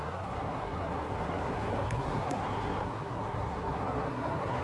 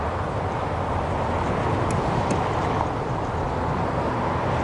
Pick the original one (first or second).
second